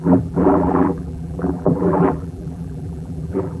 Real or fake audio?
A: fake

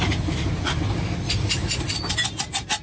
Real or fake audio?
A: real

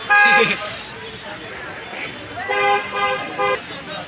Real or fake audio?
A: real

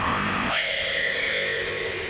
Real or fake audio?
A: fake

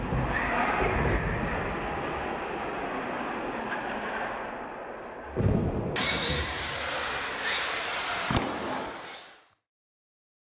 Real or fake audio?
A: real